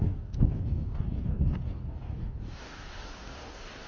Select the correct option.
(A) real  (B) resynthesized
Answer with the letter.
B